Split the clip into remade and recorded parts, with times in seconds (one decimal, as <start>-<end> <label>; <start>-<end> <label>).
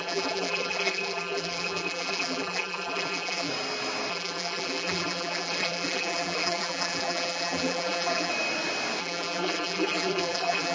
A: 0.0-3.5 remade; 3.5-4.1 recorded; 4.1-8.3 remade; 8.3-9.0 recorded; 9.0-10.7 remade